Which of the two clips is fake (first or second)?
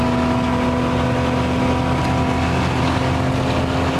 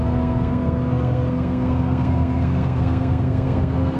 second